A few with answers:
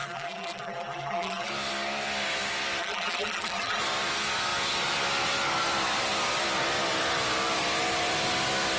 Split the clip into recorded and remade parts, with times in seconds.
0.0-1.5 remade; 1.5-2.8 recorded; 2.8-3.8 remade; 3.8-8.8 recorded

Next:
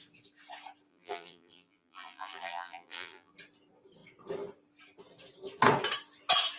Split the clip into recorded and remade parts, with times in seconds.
0.0-0.9 recorded; 0.9-3.3 remade; 3.3-6.6 recorded

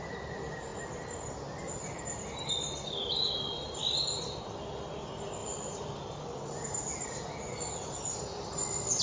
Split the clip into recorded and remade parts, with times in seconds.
0.0-3.8 recorded; 3.8-4.4 remade; 4.4-5.4 recorded; 5.4-9.0 remade

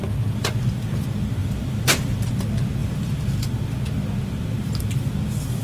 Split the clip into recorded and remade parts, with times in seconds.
0.0-1.4 recorded; 1.4-2.2 remade; 2.2-2.8 recorded; 2.8-3.3 remade; 3.3-5.6 recorded

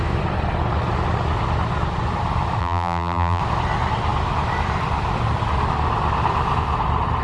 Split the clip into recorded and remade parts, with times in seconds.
0.0-2.6 recorded; 2.6-3.4 remade; 3.4-7.2 recorded

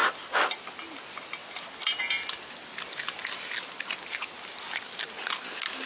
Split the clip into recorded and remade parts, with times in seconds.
0.0-5.9 recorded